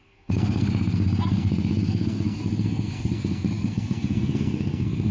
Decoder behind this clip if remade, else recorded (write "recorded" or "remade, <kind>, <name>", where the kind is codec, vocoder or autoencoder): remade, codec, SNAC